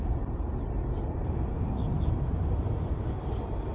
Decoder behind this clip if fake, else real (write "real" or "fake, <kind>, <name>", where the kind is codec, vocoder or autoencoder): real